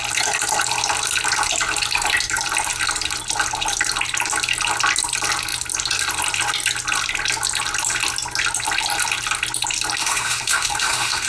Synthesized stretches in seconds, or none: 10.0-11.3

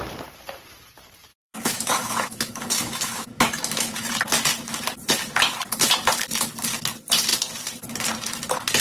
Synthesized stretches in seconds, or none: 1.3-4.1